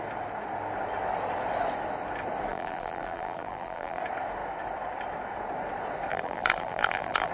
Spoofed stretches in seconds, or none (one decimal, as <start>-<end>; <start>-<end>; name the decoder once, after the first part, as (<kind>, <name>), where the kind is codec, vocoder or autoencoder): 2.5-4.0 (vocoder, BigVGAN v2); 6.1-7.3